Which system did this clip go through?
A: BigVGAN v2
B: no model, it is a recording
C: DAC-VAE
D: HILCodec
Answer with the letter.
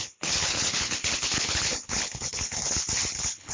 D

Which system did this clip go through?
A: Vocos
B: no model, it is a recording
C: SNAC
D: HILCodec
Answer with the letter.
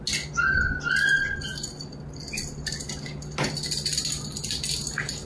B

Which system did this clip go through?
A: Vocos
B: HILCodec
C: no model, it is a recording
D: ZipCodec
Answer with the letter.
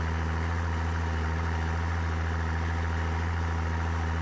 C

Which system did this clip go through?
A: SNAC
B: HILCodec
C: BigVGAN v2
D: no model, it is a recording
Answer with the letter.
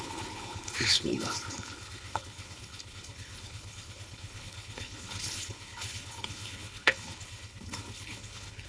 B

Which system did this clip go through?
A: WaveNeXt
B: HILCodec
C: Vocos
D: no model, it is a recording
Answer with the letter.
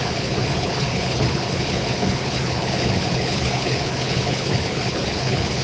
B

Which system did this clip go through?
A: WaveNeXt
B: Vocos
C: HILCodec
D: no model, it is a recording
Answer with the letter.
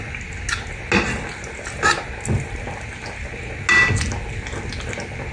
D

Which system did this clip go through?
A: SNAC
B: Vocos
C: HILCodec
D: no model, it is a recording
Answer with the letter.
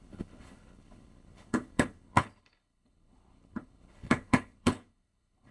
C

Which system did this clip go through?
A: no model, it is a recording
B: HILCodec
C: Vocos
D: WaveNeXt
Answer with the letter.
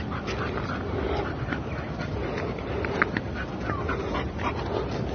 A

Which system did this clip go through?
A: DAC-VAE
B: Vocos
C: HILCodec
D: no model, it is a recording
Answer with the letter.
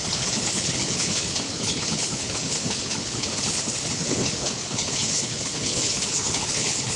C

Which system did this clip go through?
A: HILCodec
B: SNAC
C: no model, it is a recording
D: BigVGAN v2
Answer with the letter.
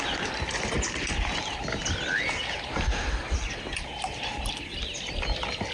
C